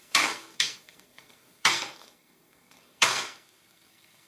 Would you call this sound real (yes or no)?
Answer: no